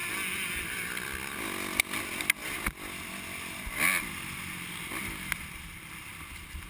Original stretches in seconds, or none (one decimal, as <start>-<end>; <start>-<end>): 0.0-6.7

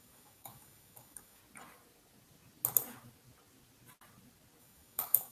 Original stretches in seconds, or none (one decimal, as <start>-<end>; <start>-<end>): 1.4-4.6

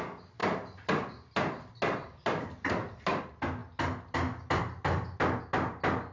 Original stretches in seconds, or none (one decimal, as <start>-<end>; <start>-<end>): 0.0-6.1